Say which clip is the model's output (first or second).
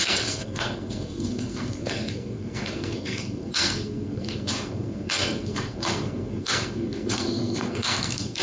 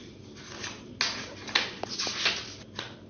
first